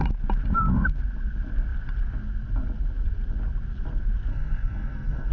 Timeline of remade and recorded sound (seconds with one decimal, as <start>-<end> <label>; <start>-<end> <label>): 0.0-4.3 recorded; 4.3-5.3 remade